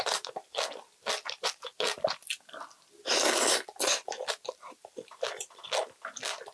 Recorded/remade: recorded